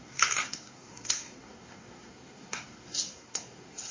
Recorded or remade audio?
remade